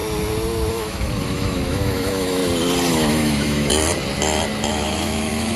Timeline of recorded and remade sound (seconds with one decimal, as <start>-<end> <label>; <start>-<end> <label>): 0.0-0.7 recorded; 0.7-2.4 remade; 2.4-2.9 recorded; 2.9-3.7 remade; 3.7-4.7 recorded; 4.7-5.6 remade